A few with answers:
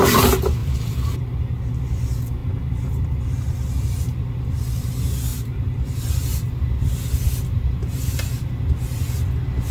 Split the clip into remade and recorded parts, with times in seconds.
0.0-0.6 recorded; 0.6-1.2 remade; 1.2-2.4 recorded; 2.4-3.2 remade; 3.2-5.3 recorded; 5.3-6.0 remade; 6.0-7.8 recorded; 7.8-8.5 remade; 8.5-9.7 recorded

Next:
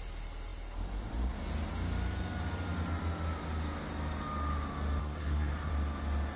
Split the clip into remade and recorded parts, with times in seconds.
0.0-5.0 recorded; 5.0-5.7 remade; 5.7-6.4 recorded

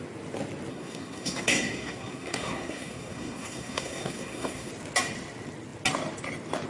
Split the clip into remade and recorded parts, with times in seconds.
0.0-0.7 recorded; 0.7-4.7 remade; 4.7-6.7 recorded